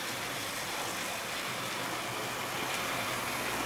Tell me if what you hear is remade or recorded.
recorded